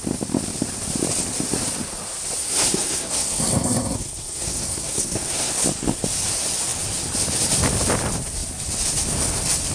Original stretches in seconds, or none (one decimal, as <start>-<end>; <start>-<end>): 0.0-2.4; 5.5-9.7